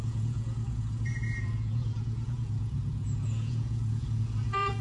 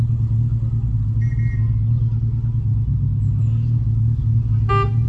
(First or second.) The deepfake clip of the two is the first